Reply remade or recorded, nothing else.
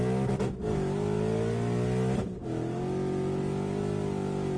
recorded